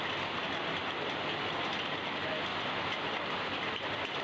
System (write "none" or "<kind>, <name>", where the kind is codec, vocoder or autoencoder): none